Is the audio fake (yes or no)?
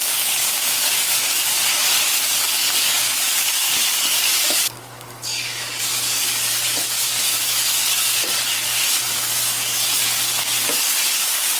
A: yes